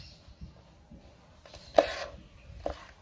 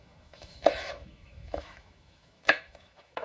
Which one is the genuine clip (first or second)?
first